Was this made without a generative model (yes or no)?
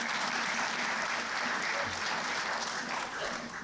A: yes